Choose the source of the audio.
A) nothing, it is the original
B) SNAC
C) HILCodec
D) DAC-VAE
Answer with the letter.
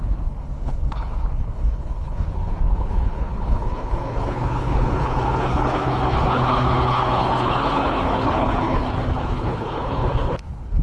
C